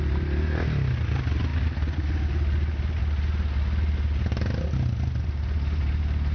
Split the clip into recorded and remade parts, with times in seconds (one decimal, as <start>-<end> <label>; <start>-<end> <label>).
0.0-6.3 recorded